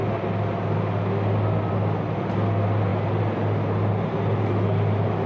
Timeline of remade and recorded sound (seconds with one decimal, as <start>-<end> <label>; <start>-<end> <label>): 0.0-5.3 recorded